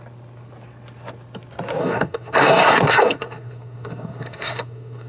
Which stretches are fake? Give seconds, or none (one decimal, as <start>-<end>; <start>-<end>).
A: 1.8-5.1